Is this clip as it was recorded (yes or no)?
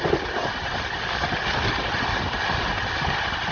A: yes